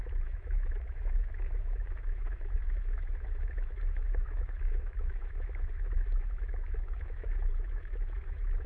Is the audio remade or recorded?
remade